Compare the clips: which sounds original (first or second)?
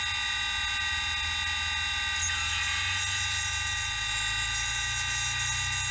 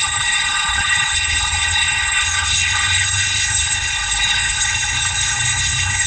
first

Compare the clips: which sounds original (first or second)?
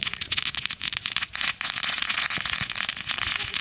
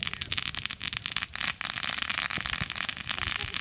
second